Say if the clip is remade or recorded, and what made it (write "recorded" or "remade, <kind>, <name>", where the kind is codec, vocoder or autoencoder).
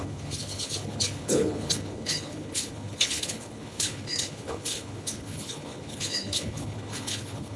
remade, codec, HILCodec